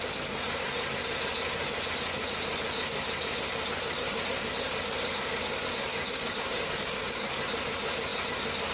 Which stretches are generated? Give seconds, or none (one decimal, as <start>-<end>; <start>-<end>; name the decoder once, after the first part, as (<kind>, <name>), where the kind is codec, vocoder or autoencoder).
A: 5.9-7.3 (codec, DAC)